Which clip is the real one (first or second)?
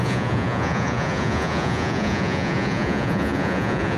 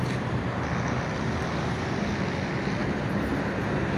second